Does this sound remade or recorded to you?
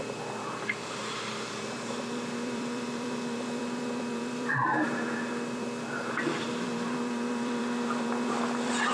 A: remade